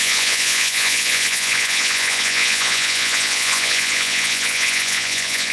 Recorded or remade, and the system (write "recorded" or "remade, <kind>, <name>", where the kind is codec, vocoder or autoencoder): remade, vocoder, Vocos